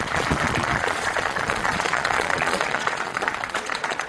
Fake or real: fake